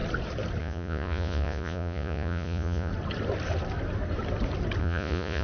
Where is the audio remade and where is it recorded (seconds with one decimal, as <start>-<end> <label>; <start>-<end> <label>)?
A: 0.0-0.6 recorded; 0.6-2.9 remade; 2.9-4.8 recorded; 4.8-5.4 remade